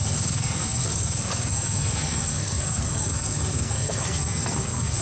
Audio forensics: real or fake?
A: fake